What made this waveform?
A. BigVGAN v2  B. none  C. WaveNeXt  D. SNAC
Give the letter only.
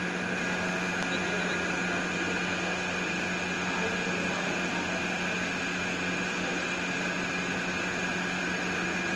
B